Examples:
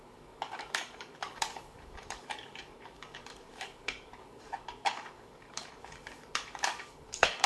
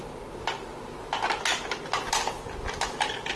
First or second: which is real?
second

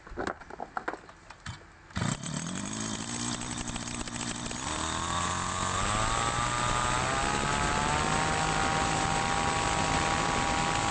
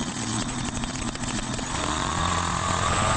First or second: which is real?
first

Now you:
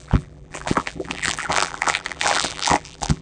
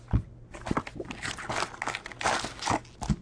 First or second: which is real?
second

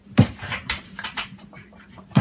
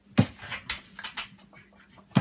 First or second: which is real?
second